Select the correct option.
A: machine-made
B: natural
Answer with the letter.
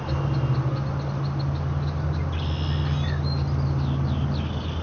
B